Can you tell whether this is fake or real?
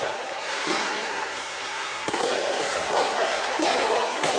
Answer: fake